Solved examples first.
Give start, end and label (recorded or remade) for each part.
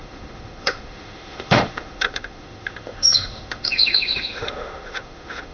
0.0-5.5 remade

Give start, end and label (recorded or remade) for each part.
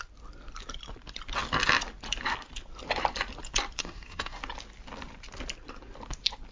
0.0-3.8 recorded; 3.8-4.4 remade; 4.4-6.5 recorded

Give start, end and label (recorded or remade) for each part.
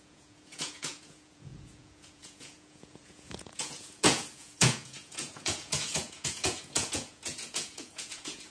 0.0-8.5 remade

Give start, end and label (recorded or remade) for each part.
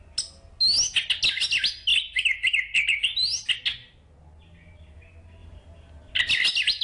0.0-6.8 recorded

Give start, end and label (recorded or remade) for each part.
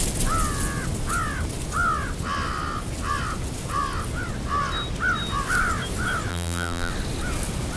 0.0-6.3 recorded; 6.3-6.9 remade; 6.9-7.8 recorded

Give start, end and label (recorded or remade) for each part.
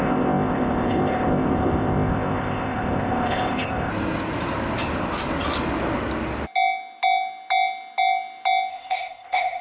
0.0-3.9 remade; 3.9-8.7 recorded; 8.7-9.6 remade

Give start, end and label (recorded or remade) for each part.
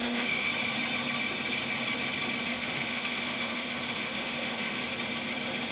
0.0-0.5 remade; 0.5-2.4 recorded; 2.4-4.8 remade; 4.8-5.7 recorded